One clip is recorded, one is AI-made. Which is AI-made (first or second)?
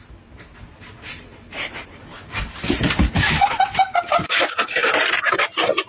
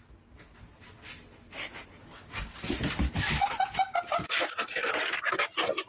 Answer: first